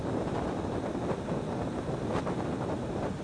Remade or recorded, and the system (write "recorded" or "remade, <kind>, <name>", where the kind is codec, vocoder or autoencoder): recorded